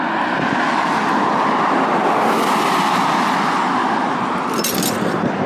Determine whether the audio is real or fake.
real